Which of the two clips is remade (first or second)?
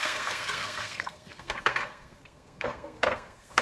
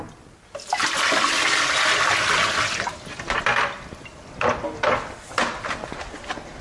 first